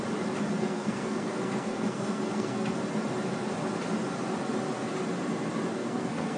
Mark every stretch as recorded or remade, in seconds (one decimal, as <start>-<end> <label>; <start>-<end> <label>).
0.0-0.6 recorded; 0.6-2.8 remade; 2.8-5.7 recorded; 5.7-6.4 remade